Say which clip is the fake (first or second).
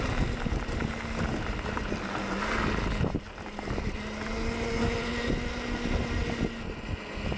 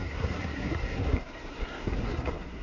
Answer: second